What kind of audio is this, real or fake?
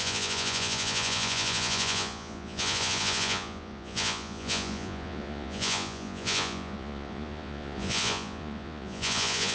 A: fake